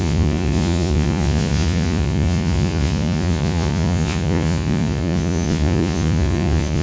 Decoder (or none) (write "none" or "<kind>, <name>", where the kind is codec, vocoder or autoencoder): vocoder, Vocos